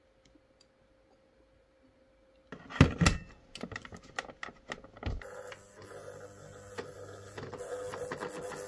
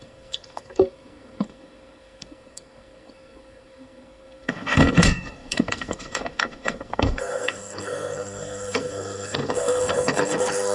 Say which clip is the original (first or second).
first